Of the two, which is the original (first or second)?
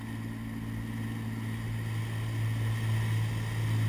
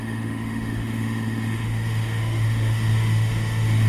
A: first